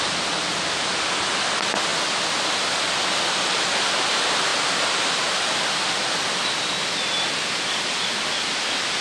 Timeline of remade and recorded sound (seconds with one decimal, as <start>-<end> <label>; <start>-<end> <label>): 0.0-9.0 recorded